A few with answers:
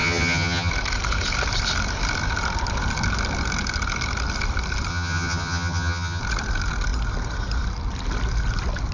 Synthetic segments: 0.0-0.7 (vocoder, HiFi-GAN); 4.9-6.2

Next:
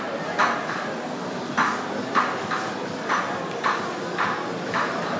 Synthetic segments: none

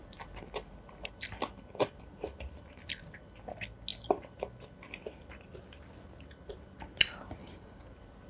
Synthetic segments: 7.4-7.9 (codec, DAC)

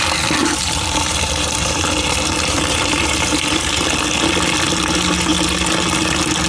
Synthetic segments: 0.4-3.8 (vocoder, BigVGAN v2)

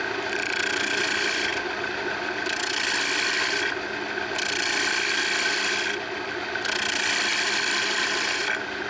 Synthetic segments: none

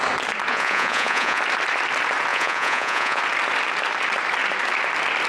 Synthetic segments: 0.5-1.4 (vocoder, Vocos); 2.3-3.2

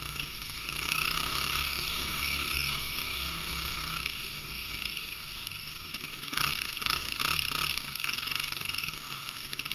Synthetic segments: 0.0-7.2 (codec, DAC); 7.7-9.7

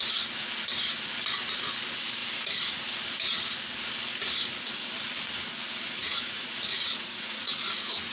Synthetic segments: 6.0-8.1 (vocoder, Vocos)